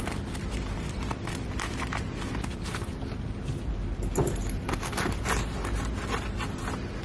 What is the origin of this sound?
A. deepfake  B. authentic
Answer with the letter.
B